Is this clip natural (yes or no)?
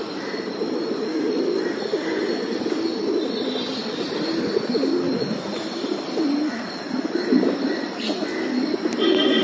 yes